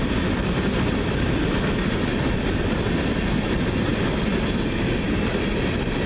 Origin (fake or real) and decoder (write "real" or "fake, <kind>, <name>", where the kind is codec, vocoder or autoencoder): real